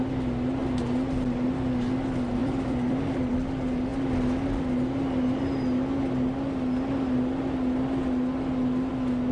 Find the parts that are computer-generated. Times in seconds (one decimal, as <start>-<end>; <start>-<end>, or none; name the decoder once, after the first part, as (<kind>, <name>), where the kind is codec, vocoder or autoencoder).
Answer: 2.4-3.3 (vocoder, BigVGAN v2)